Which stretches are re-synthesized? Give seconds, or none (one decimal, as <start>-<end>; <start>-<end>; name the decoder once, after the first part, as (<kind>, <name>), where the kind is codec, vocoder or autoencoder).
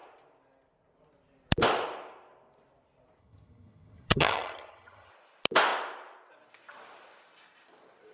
3.2-5.1 (vocoder, HiFi-GAN)